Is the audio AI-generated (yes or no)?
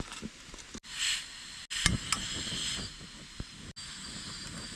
no